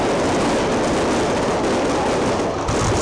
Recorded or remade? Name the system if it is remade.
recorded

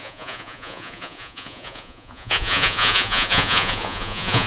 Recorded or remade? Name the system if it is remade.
remade, vocoder, Vocos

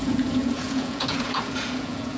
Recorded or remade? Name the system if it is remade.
remade, vocoder, Vocos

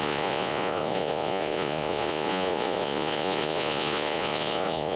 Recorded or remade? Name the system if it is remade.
remade, vocoder, Vocos